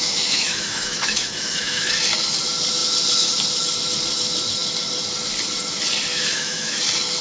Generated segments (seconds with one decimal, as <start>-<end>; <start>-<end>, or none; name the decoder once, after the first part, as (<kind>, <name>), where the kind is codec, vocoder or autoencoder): 0.0-1.9 (autoencoder, DAC-VAE); 6.1-6.8